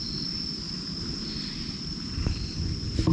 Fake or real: real